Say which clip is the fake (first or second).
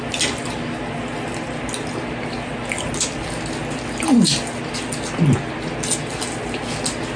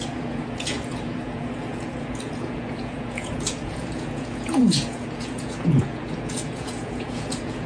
second